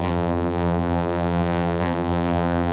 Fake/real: fake